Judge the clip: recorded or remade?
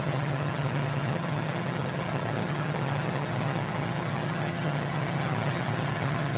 remade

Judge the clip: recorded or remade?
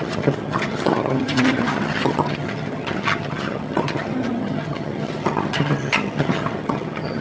remade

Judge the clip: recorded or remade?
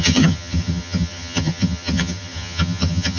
remade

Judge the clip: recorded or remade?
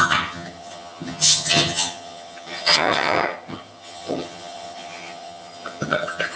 remade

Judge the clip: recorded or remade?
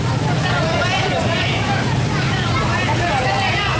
recorded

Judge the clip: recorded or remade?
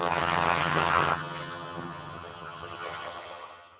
remade